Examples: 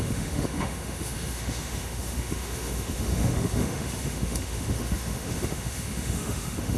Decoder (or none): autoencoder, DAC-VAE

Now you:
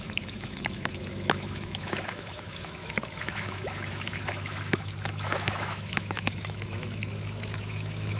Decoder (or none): autoencoder, DAC-VAE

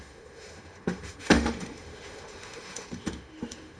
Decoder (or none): autoencoder, DAC-VAE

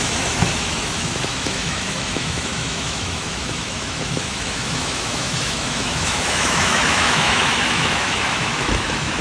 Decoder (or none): autoencoder, DAC-VAE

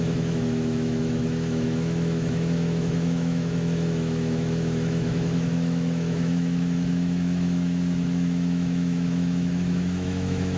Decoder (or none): autoencoder, DAC-VAE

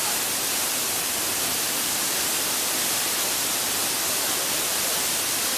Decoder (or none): none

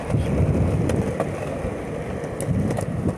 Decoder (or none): none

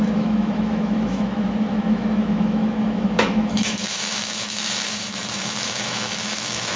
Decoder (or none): autoencoder, DAC-VAE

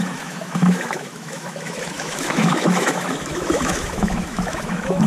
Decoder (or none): autoencoder, DAC-VAE